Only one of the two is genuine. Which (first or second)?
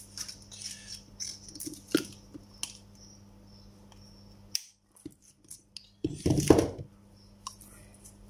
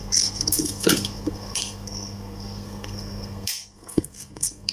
first